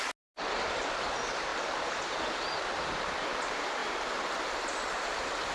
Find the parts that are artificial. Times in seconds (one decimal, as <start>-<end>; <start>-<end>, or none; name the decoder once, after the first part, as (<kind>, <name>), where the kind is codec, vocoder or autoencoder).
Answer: none